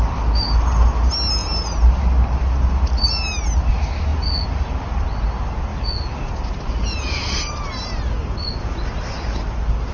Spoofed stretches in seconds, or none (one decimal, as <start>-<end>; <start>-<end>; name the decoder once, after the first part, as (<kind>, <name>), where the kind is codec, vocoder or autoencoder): none

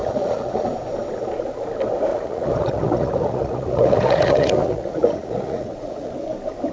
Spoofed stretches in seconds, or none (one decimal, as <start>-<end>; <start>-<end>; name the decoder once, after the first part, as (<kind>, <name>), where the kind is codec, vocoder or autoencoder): 0.0-0.7 (vocoder, Vocos); 2.1-6.1

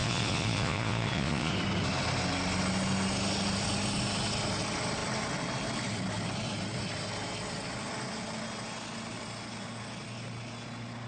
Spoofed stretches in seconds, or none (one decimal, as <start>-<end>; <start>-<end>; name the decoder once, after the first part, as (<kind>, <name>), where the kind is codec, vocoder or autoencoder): 0.0-1.5 (vocoder, Vocos)

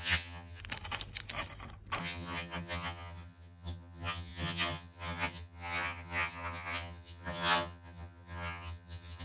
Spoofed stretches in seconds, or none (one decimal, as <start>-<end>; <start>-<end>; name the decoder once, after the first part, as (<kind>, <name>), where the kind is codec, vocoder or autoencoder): 0.0-0.6 (vocoder, HiFi-GAN); 2.0-9.2

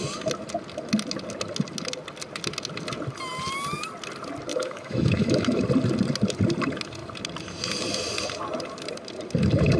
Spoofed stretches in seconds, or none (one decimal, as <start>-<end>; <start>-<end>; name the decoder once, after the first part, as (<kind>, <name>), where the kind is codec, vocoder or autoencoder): 4.5-5.6 (autoencoder, DAC-VAE)

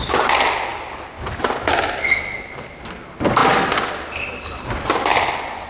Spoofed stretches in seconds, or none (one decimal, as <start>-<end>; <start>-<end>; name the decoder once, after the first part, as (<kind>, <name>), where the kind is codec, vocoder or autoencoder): none

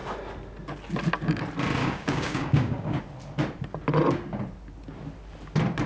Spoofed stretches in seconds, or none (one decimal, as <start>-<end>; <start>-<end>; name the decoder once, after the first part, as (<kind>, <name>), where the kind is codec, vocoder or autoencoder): 1.8-3.0 (codec, DAC)

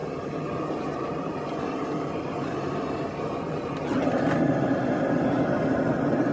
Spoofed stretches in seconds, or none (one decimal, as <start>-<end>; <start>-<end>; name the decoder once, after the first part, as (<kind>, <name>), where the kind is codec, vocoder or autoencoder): none